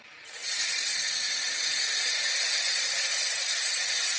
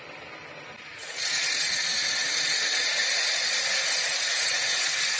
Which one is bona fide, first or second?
second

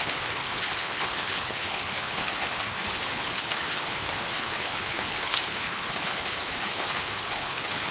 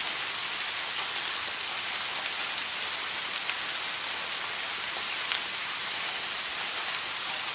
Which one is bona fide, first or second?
second